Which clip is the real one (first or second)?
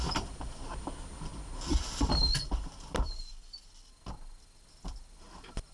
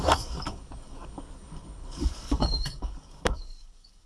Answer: first